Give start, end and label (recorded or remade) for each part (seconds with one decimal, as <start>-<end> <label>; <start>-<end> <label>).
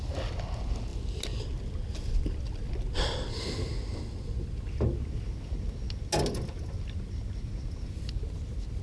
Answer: 0.0-8.8 recorded